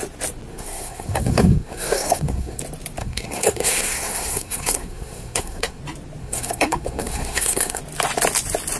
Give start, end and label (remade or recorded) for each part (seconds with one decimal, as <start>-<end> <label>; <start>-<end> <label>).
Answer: 0.0-0.5 recorded; 0.5-2.6 remade; 2.6-3.0 recorded; 3.0-5.8 remade; 5.8-6.2 recorded; 6.2-7.8 remade; 7.8-8.8 recorded